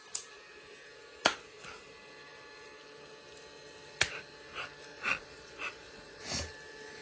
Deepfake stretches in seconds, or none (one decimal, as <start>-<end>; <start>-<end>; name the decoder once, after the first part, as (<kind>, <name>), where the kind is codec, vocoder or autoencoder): 4.9-6.2 (vocoder, Vocos)